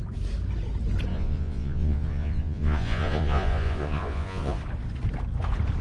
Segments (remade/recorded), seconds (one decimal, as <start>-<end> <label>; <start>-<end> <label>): 0.0-1.1 recorded; 1.1-4.6 remade; 4.6-5.8 recorded